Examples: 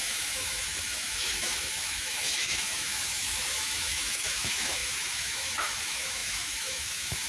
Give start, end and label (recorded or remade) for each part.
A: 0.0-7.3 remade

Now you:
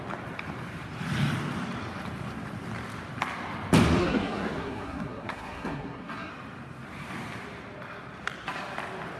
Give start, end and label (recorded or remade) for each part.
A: 0.0-4.0 recorded; 4.0-6.3 remade; 6.3-9.2 recorded

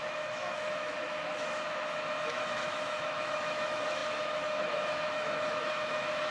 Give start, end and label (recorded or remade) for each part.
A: 0.0-6.3 remade

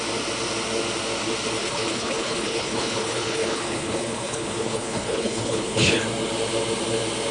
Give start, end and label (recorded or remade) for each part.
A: 0.0-1.6 recorded; 1.6-6.0 remade; 6.0-7.3 recorded

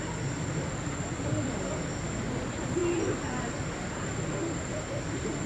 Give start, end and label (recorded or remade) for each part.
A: 0.0-5.5 recorded

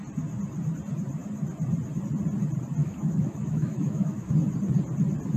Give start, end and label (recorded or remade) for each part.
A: 0.0-2.8 recorded; 2.8-4.3 remade; 4.3-5.4 recorded